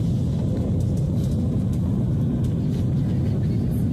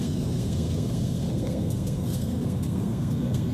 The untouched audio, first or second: first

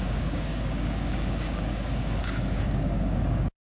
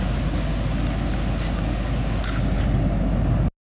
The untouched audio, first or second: second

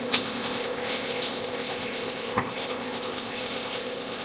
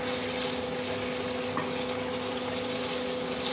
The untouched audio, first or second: second